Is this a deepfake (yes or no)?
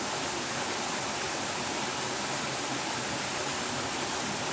no